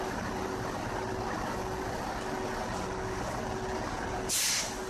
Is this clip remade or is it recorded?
recorded